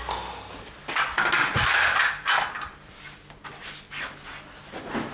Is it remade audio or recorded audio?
recorded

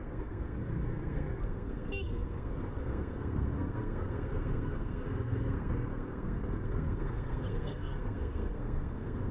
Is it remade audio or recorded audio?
remade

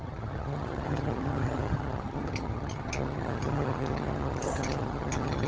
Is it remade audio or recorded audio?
remade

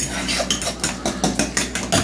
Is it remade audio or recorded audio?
recorded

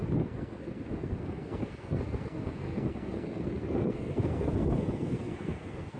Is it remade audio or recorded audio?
remade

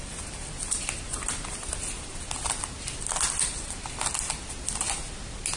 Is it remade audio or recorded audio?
recorded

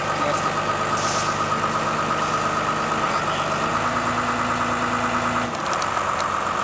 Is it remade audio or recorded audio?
recorded